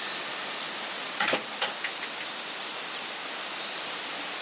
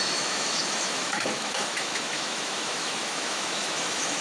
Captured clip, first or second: first